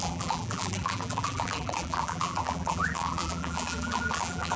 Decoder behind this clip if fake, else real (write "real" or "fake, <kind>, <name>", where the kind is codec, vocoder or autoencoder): fake, vocoder, BigVGAN v2